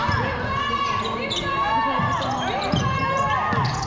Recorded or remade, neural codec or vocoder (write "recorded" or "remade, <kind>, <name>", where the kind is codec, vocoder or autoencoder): recorded